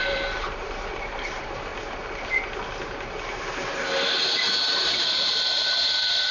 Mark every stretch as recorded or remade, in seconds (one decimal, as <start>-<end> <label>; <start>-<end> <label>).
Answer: 0.0-1.7 remade; 1.7-4.8 recorded; 4.8-6.3 remade